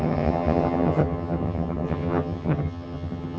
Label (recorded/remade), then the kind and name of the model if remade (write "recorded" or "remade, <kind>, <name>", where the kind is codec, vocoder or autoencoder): remade, vocoder, HiFi-GAN